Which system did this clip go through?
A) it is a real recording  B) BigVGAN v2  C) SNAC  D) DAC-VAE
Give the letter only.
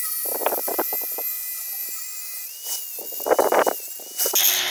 A